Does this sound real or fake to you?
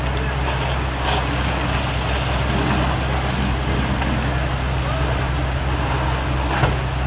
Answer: real